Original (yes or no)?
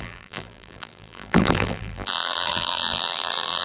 no